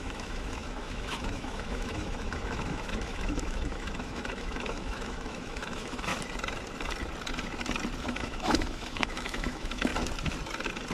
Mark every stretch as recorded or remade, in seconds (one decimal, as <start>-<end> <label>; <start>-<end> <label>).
0.0-6.1 remade; 6.1-8.0 recorded; 8.0-9.9 remade; 9.9-10.9 recorded